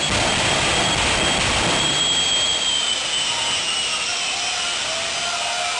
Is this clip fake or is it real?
real